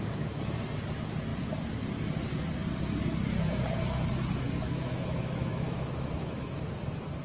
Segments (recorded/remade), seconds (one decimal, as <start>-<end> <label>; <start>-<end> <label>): 0.0-4.6 recorded; 4.6-6.6 remade; 6.6-7.2 recorded